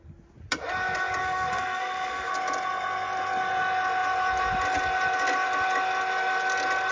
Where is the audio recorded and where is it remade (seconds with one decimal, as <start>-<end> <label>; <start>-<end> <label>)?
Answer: 0.0-1.2 recorded; 1.2-2.3 remade; 2.3-6.9 recorded